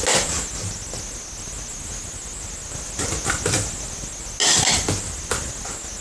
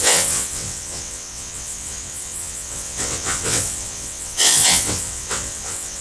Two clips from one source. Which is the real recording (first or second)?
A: first